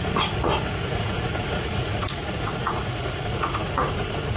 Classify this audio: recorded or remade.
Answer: remade